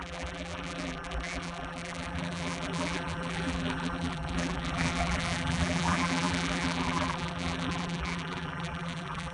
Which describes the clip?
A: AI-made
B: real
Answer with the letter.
A